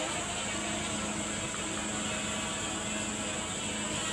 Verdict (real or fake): real